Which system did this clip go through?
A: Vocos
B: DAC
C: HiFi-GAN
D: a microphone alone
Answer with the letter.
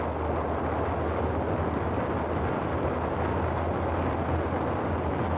D